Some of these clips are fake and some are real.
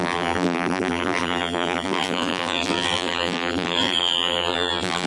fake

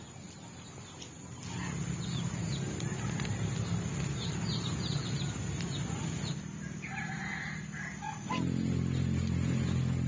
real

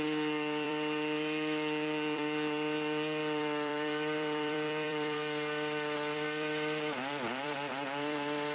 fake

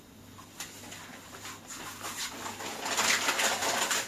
real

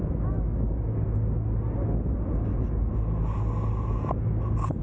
real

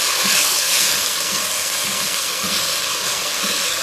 fake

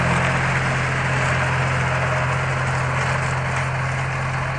real